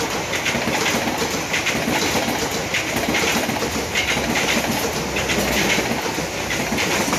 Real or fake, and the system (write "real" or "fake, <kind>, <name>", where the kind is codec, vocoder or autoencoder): real